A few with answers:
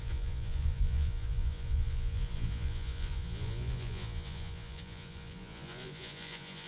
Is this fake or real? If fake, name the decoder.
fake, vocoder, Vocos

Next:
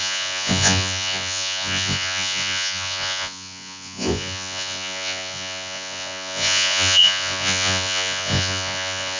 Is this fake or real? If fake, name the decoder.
fake, vocoder, Vocos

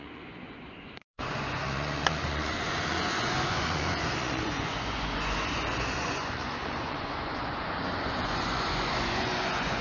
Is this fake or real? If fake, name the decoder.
fake, vocoder, Vocos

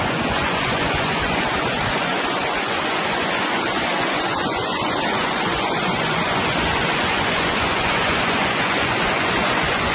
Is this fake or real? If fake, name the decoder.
fake, vocoder, Vocos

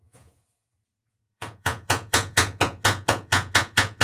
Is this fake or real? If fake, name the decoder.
fake, vocoder, Vocos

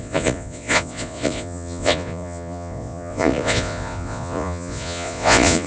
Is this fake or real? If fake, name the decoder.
fake, vocoder, Vocos